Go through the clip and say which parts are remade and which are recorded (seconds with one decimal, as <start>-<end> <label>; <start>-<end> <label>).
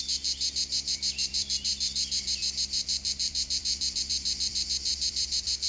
0.0-5.7 remade